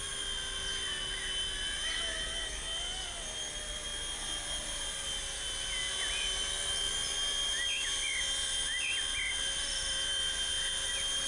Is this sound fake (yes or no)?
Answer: no